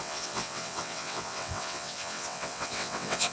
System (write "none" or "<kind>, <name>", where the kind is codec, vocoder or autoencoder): vocoder, WaveNeXt